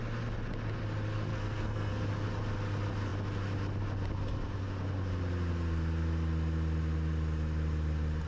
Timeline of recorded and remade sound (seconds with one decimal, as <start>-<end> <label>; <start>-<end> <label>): 0.0-1.3 recorded; 1.3-1.9 remade; 1.9-8.3 recorded